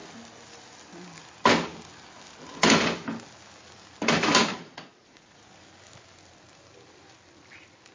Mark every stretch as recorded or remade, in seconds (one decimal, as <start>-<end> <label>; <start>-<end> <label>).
0.0-4.5 recorded; 4.5-5.5 remade; 5.5-7.9 recorded